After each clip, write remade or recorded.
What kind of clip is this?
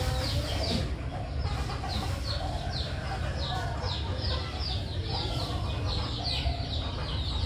recorded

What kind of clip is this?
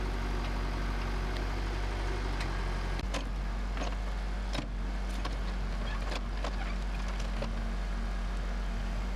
recorded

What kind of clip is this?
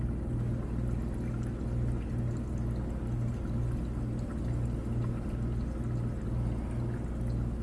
recorded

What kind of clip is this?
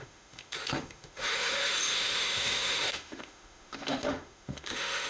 remade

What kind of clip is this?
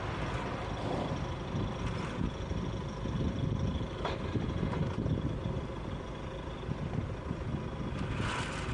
recorded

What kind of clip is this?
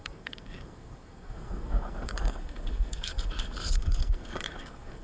remade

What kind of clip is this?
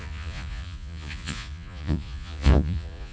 remade